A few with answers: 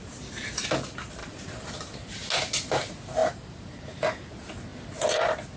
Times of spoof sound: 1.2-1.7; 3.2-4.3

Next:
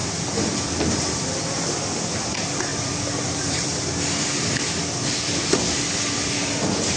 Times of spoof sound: 0.0-1.2; 2.7-4.0

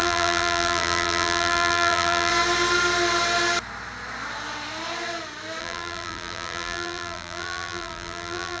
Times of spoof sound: 0.0-2.3; 5.6-8.6

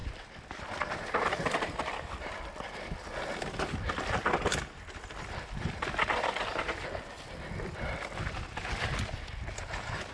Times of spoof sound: 0.0-2.3